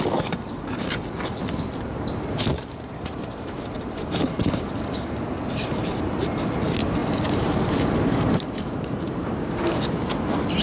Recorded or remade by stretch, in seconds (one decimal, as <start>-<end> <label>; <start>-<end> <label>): 0.0-2.5 recorded; 2.5-6.2 remade; 6.2-7.0 recorded; 7.0-9.8 remade; 9.8-10.6 recorded